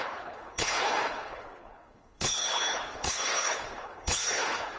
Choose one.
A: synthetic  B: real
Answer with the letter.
A